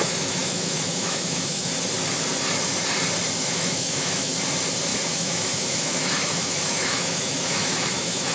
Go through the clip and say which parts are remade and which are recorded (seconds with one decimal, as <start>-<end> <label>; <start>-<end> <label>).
0.0-1.7 remade; 1.7-3.4 recorded; 3.4-4.3 remade; 4.3-5.1 recorded; 5.1-8.3 remade